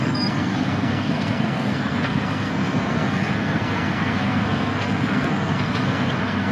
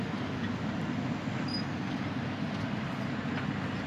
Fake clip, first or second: first